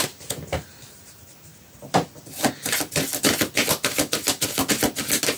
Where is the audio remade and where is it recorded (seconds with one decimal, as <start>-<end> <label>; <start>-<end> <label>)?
0.0-1.5 recorded; 1.5-4.7 remade; 4.7-5.4 recorded